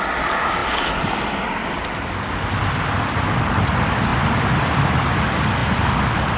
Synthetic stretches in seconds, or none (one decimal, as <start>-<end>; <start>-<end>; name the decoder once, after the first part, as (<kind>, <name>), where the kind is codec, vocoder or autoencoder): none